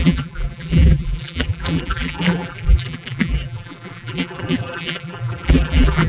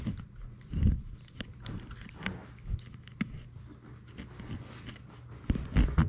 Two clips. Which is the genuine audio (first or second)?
second